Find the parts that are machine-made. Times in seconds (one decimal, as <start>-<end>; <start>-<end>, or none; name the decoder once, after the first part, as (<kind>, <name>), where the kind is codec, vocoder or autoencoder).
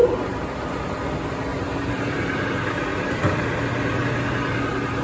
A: 0.0-0.6 (vocoder, BigVGAN v2); 1.5-2.4; 2.9-3.6